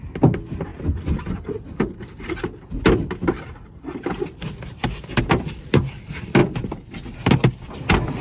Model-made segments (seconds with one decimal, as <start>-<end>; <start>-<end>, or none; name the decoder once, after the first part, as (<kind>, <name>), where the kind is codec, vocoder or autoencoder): 6.4-6.9 (vocoder, BigVGAN v2)